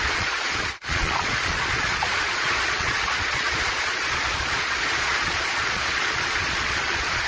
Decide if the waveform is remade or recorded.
remade